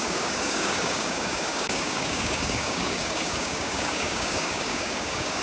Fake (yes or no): yes